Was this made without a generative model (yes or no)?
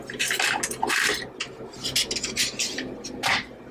yes